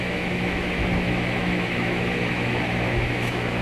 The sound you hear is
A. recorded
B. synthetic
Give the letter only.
B